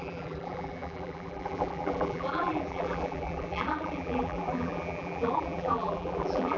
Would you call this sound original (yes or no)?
no